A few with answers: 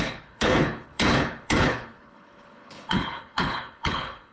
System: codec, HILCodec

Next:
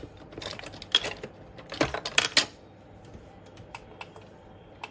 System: none